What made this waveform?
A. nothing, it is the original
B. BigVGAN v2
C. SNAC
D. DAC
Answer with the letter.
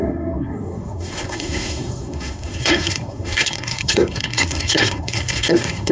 C